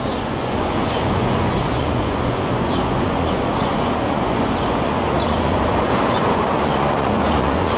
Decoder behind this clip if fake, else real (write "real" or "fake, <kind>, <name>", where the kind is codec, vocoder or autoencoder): fake, vocoder, Vocos